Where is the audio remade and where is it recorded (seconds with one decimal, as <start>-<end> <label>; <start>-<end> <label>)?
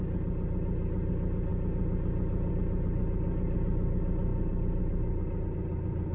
0.0-6.1 recorded